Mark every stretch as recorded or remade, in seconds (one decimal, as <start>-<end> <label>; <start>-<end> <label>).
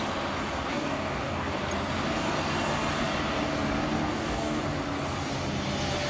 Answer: 0.0-0.7 recorded; 0.7-1.6 remade; 1.6-4.0 recorded; 4.0-4.6 remade; 4.6-6.1 recorded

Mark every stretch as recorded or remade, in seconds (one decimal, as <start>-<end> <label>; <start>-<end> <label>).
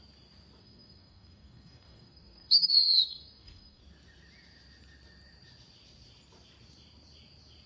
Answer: 0.0-0.6 recorded; 0.6-3.8 remade; 3.8-7.7 recorded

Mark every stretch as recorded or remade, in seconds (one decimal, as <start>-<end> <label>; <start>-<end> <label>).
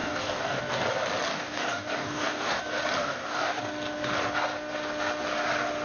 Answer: 0.0-0.6 remade; 0.6-1.3 recorded; 1.3-2.6 remade; 2.6-3.0 recorded; 3.0-3.6 remade; 3.6-5.8 recorded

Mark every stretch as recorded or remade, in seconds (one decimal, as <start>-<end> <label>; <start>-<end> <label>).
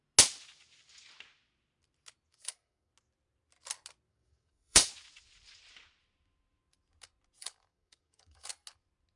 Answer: 0.0-2.3 recorded; 2.3-2.9 remade; 2.9-4.1 recorded; 4.1-4.9 remade; 4.9-7.4 recorded; 7.4-8.5 remade; 8.5-9.2 recorded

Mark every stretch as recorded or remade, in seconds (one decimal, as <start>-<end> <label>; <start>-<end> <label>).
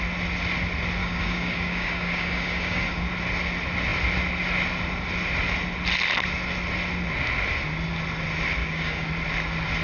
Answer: 0.0-1.0 recorded; 1.0-3.0 remade; 3.0-8.6 recorded; 8.6-9.1 remade; 9.1-9.8 recorded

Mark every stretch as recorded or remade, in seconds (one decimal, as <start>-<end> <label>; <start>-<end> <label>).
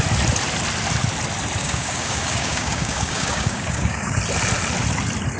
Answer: 0.0-1.6 recorded; 1.6-4.2 remade; 4.2-5.4 recorded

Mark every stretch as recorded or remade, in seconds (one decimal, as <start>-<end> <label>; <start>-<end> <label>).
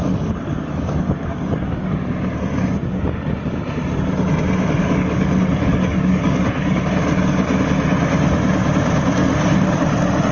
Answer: 0.0-1.9 remade; 1.9-4.8 recorded; 4.8-6.8 remade; 6.8-9.2 recorded; 9.2-9.8 remade; 9.8-10.3 recorded